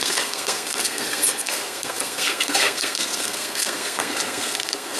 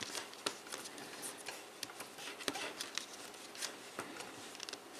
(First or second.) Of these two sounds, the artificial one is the first